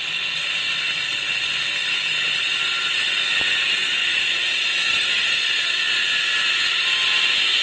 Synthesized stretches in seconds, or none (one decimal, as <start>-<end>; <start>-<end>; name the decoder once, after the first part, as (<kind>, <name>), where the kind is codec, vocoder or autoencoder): 4.0-6.0 (vocoder, Vocos)